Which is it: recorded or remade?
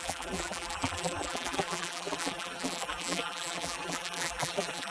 remade